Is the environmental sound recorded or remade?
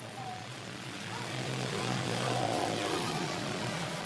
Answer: remade